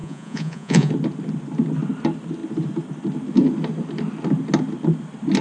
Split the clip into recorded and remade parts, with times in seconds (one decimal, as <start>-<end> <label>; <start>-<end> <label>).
0.0-0.9 remade; 0.9-5.4 recorded